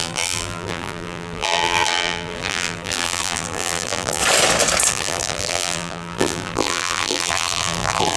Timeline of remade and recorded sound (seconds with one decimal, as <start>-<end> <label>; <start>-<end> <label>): 0.0-4.2 remade; 4.2-4.9 recorded; 4.9-8.2 remade